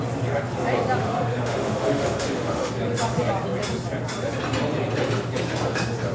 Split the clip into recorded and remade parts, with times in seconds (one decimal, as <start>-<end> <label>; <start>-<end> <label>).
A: 0.0-1.0 recorded; 1.0-2.7 remade; 2.7-6.1 recorded